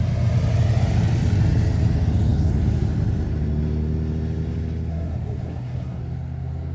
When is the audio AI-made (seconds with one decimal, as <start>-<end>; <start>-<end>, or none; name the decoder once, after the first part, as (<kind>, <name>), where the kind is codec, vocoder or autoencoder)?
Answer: 4.9-6.0 (codec, SNAC)